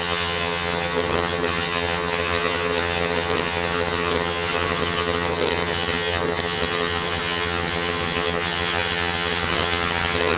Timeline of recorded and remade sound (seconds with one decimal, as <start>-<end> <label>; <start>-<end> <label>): 0.0-10.4 remade